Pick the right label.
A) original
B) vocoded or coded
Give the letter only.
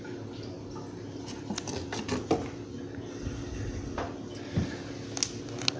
A